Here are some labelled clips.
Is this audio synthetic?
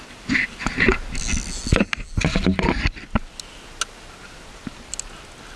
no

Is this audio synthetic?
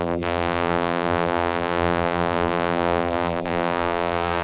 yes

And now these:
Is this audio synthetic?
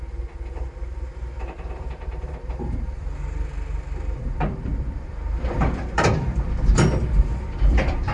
yes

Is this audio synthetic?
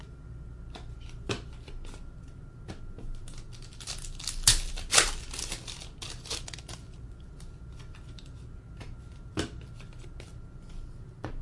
no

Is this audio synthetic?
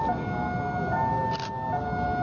no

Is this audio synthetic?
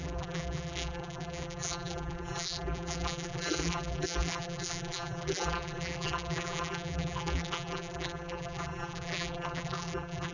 yes